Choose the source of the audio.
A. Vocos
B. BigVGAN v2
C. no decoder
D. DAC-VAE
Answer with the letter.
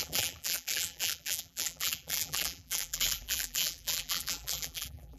B